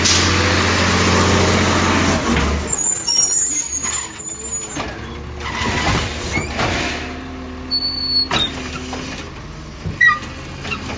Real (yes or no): yes